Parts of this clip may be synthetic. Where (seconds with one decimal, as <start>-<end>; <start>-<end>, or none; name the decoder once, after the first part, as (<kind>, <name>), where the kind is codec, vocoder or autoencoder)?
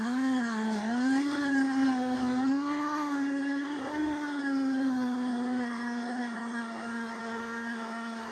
0.0-8.3 (codec, SNAC)